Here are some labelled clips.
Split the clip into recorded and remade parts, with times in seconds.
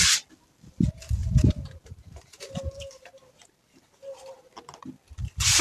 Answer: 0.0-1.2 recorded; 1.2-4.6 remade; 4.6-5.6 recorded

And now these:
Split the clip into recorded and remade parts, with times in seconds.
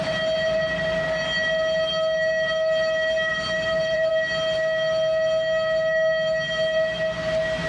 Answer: 0.0-3.3 recorded; 3.3-4.1 remade; 4.1-7.7 recorded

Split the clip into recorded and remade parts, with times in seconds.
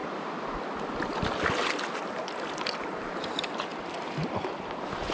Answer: 0.0-2.9 recorded; 2.9-3.7 remade; 3.7-4.3 recorded; 4.3-5.1 remade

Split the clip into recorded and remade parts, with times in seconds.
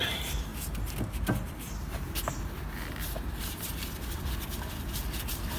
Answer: 0.0-0.5 remade; 0.5-3.9 recorded; 3.9-5.6 remade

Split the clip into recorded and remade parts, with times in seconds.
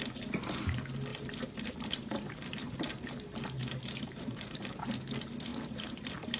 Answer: 0.0-1.1 recorded; 1.1-4.9 remade; 4.9-5.5 recorded; 5.5-6.4 remade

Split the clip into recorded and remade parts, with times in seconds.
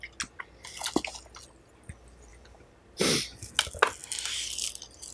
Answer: 0.0-2.3 recorded; 2.3-3.5 remade; 3.5-4.0 recorded; 4.0-5.1 remade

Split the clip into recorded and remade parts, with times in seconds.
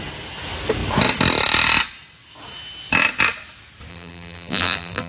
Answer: 0.0-3.9 recorded; 3.9-5.1 remade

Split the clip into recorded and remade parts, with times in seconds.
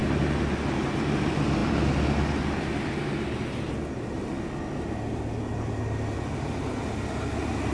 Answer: 0.0-7.7 recorded